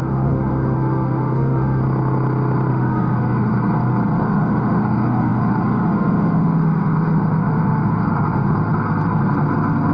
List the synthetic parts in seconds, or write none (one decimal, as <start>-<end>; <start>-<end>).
0.0-1.8; 2.7-3.5; 4.2-8.7